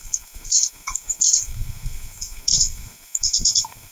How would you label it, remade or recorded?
remade